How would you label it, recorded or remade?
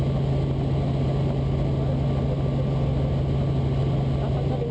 recorded